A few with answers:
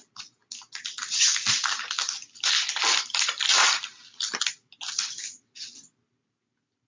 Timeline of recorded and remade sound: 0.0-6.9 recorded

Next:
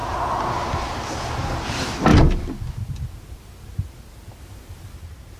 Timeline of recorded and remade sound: 0.0-0.7 recorded; 0.7-2.1 remade; 2.1-4.4 recorded; 4.4-5.4 remade

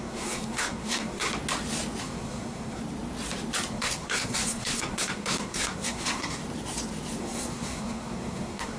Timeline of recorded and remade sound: 0.0-1.3 remade; 1.3-2.0 recorded; 2.0-2.8 remade; 2.8-3.7 recorded; 3.7-6.4 remade; 6.4-7.2 recorded; 7.2-8.8 remade

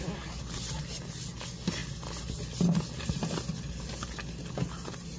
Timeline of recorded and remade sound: 0.0-5.2 recorded

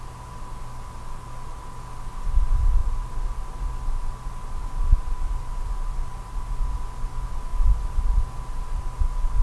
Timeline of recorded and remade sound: 0.0-2.8 recorded; 2.8-6.7 remade; 6.7-7.5 recorded; 7.5-8.8 remade; 8.8-9.4 recorded

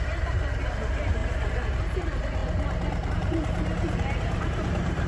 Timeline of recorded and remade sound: 0.0-1.2 remade; 1.2-1.8 recorded; 1.8-2.4 remade; 2.4-3.1 recorded; 3.1-5.1 remade